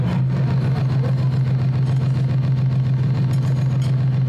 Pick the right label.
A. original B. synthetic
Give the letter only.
A